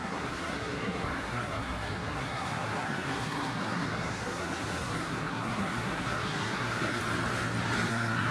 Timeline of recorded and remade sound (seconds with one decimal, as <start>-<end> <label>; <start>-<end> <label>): 0.0-7.0 remade; 7.0-7.9 recorded; 7.9-8.3 remade